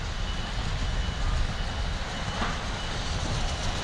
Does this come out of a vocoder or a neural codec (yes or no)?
no